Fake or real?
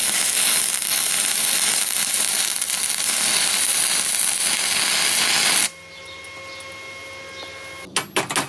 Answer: real